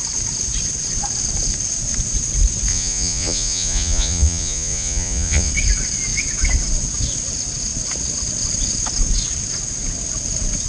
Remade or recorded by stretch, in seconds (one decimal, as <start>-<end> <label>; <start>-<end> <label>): 0.0-2.7 recorded; 2.7-5.5 remade; 5.5-10.7 recorded